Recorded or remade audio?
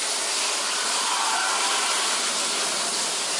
recorded